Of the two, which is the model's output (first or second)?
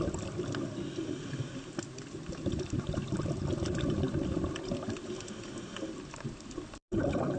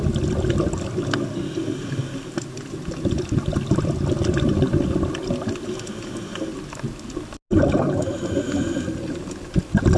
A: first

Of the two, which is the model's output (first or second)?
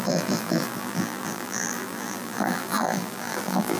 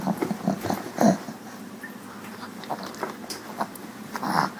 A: first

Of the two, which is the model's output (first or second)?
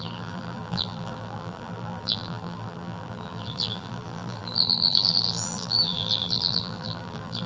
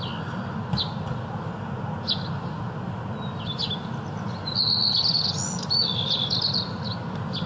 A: first